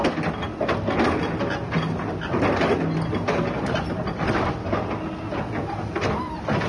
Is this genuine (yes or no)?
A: yes